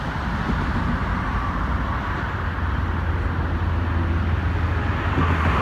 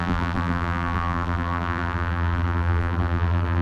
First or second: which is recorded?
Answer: first